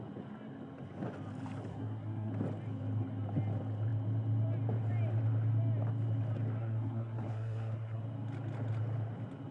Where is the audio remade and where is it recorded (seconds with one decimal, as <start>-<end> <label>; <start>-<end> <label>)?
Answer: 0.0-1.7 recorded; 1.7-2.3 remade; 2.3-6.6 recorded; 6.6-8.0 remade; 8.0-9.5 recorded